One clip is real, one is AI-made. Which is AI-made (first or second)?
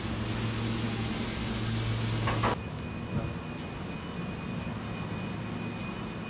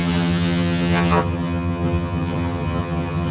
second